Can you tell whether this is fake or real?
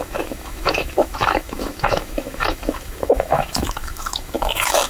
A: fake